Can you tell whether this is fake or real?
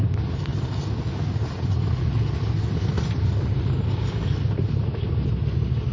real